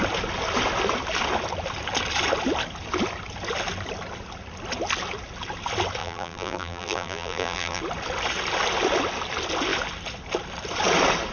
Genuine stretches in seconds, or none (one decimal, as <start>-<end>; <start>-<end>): 0.0-6.0; 7.8-11.3